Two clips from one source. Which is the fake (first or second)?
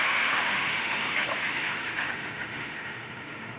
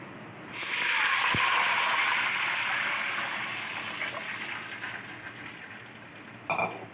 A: first